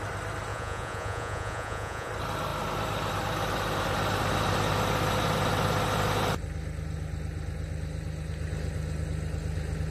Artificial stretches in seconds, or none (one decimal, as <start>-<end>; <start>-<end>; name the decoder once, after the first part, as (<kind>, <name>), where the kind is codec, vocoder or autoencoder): 0.5-2.1 (vocoder, Vocos)